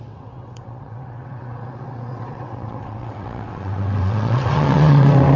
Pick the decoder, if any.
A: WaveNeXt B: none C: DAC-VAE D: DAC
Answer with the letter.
A